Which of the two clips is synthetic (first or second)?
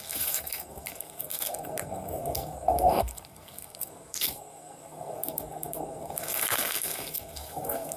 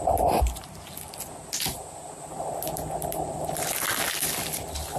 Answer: first